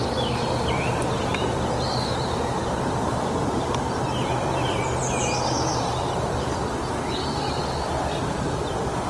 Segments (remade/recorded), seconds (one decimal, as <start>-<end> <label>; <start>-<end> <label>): 0.0-1.0 recorded; 1.0-4.8 remade; 4.8-5.7 recorded; 5.7-6.6 remade; 6.6-9.1 recorded